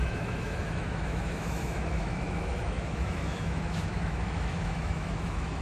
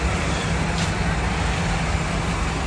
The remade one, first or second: first